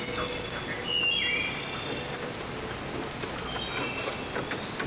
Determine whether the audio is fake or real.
real